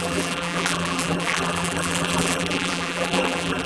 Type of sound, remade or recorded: remade